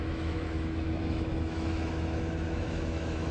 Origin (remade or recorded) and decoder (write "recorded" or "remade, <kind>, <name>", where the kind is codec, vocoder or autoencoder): remade, autoencoder, DAC-VAE